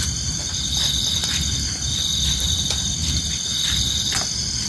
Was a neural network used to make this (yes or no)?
no